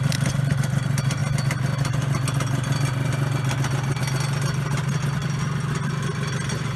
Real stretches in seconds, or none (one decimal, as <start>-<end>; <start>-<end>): 0.0-6.8

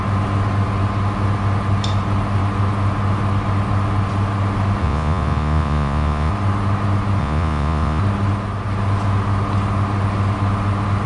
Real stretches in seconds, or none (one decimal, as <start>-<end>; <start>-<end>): 0.0-4.8; 6.3-7.2; 8.0-11.1

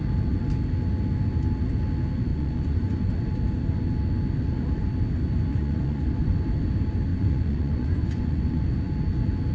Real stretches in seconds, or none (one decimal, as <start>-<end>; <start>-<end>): 0.0-2.3; 3.1-5.5; 6.4-7.1; 8.6-9.5

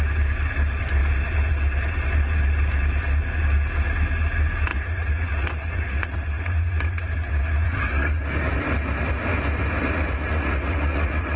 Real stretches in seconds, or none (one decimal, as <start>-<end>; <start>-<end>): 0.0-4.7; 8.2-9.8

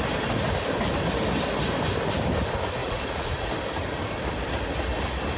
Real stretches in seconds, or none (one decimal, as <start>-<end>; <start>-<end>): 0.0-2.8; 3.5-5.4

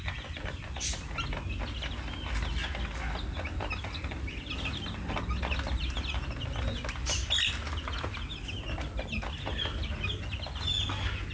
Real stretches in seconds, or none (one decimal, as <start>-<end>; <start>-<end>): 0.0-11.3

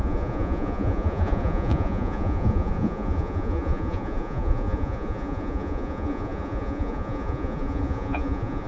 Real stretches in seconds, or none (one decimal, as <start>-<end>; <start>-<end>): none

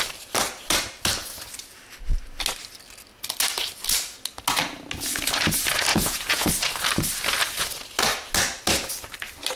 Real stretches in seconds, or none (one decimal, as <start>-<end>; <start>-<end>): 0.0-5.9; 6.5-9.6